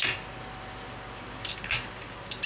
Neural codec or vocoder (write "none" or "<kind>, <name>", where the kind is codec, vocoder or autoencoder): none